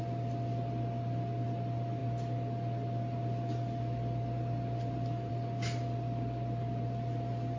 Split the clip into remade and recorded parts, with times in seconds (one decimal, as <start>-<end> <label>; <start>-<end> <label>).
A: 0.0-7.6 recorded